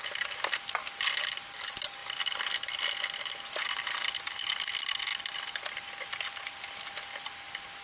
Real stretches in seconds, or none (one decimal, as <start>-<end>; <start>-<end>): 0.0-7.8